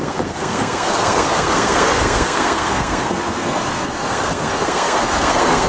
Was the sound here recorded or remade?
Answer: remade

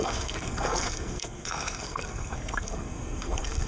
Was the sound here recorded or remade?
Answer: remade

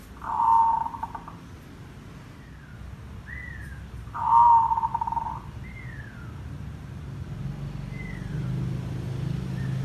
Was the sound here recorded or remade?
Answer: recorded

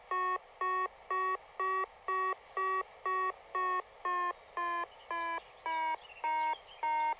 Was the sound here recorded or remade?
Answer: recorded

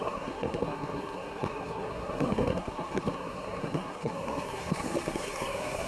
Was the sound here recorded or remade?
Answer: remade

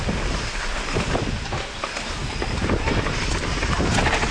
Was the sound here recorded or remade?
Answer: recorded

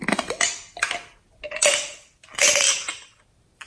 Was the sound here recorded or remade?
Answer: recorded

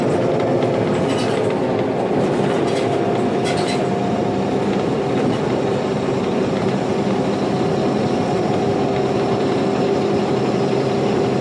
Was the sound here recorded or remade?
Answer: recorded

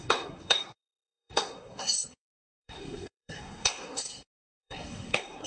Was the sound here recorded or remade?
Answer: remade